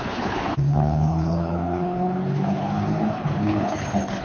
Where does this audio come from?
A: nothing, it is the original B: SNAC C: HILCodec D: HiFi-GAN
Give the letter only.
C